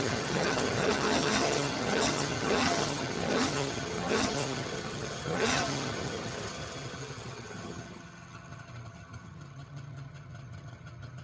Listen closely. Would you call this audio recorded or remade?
remade